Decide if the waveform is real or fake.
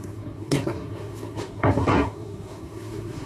fake